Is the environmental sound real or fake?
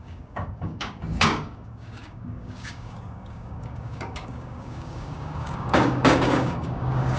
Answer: fake